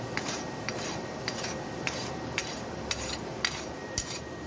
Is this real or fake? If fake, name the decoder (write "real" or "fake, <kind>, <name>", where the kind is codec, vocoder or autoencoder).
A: fake, vocoder, BigVGAN v2